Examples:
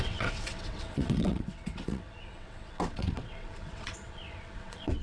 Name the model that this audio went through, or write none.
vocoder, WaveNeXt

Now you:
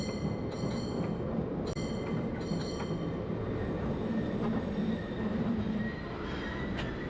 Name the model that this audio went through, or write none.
none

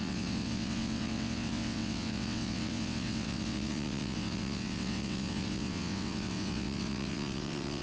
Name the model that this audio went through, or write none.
vocoder, WaveNeXt